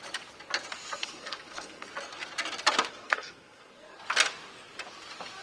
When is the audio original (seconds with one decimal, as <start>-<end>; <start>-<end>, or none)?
0.0-1.0; 1.9-2.9; 4.0-5.4